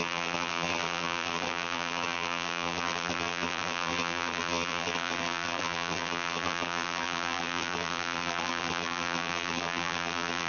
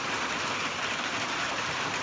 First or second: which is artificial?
first